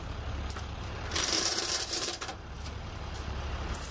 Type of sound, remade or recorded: remade